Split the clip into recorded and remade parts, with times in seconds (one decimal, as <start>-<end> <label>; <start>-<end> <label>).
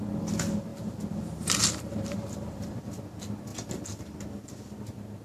0.0-0.7 recorded; 0.7-2.7 remade; 2.7-5.2 recorded